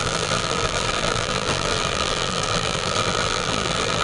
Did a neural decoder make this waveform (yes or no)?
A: yes